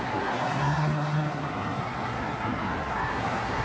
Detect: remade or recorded remade